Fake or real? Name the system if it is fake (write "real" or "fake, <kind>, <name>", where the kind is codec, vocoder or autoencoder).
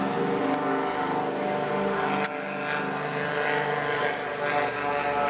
real